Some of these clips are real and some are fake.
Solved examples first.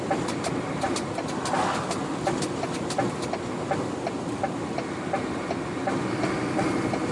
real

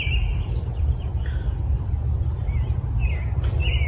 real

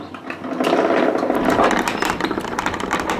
fake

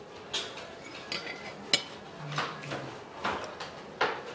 real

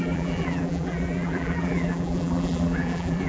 fake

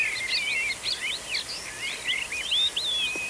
real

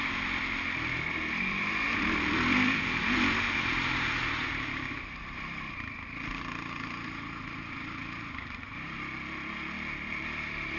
fake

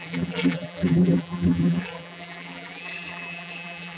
fake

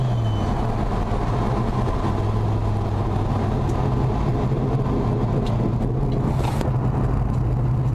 real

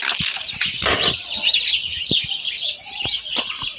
fake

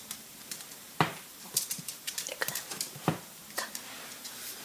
fake